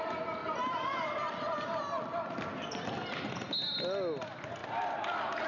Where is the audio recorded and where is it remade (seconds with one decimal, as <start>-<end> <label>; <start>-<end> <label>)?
0.0-0.4 recorded; 0.4-3.7 remade; 3.7-5.5 recorded